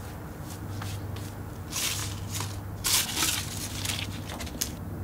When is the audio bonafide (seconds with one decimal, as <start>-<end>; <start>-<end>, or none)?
0.0-5.0